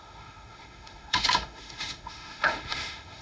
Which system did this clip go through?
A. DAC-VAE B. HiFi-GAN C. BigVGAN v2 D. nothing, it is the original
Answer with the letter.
A